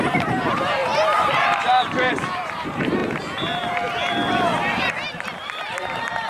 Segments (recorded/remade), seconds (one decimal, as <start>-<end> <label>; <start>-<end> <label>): 0.0-3.0 remade; 3.0-4.9 recorded; 4.9-6.3 remade